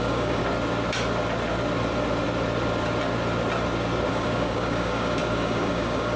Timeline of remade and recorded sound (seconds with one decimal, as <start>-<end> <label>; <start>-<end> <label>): 0.0-0.4 remade; 0.4-4.1 recorded; 4.1-6.2 remade